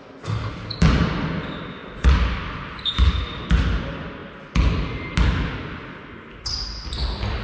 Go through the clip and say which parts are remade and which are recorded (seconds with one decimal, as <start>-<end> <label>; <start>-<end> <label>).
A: 0.0-7.4 recorded